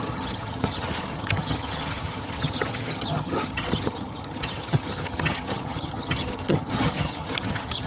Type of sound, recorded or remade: remade